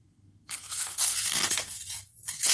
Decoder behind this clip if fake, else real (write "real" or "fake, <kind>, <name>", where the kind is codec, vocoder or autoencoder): fake, codec, SNAC